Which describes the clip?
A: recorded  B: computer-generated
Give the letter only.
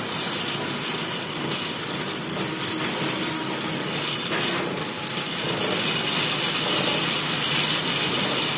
A